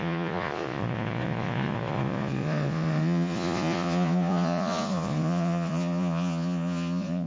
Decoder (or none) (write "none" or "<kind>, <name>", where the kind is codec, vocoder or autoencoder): vocoder, Vocos